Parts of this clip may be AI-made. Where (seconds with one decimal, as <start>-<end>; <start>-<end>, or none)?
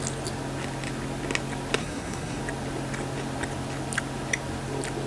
1.8-2.4